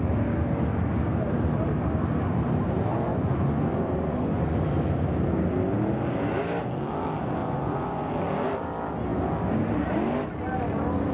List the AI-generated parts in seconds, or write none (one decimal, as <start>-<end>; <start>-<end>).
3.1-4.6; 7.4-8.1

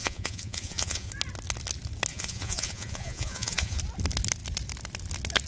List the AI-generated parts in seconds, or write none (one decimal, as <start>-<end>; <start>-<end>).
0.0-1.1; 2.1-3.8

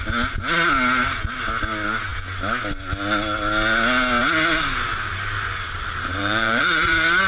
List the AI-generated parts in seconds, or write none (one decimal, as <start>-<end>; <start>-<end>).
6.2-7.3

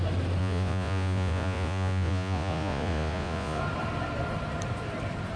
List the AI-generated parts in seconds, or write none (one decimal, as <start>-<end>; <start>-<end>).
0.4-3.6

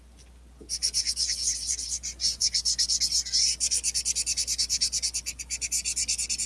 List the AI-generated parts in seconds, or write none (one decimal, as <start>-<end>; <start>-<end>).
none

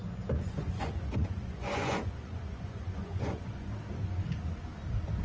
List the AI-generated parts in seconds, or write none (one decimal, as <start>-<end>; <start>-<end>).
0.0-3.7